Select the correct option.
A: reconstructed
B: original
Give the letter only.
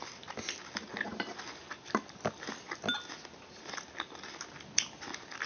B